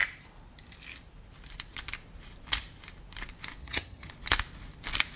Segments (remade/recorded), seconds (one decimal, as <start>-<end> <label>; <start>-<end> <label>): 0.0-3.6 recorded; 3.6-4.1 remade; 4.1-5.2 recorded